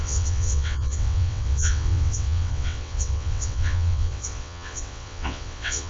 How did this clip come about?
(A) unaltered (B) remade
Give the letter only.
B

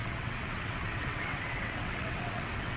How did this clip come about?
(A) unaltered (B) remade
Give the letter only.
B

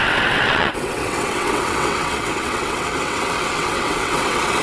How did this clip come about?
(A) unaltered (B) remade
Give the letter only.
B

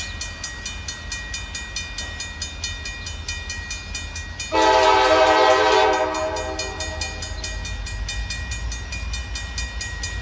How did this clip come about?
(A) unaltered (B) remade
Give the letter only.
A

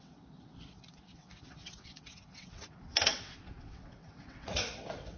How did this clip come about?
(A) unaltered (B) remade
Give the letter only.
B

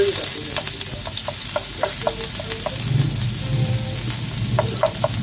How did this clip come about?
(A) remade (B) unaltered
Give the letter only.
B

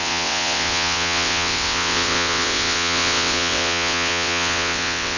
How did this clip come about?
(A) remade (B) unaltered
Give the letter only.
A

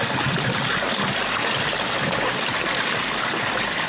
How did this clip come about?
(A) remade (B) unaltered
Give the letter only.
B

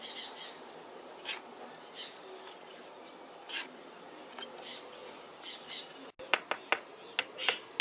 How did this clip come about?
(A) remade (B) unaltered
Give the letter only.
B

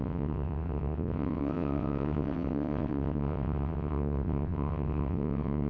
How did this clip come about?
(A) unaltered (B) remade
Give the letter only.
B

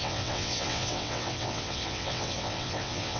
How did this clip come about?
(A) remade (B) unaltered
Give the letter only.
A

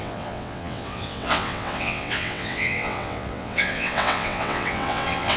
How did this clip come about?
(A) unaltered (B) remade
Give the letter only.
B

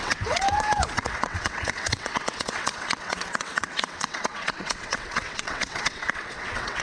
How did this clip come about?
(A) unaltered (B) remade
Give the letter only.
B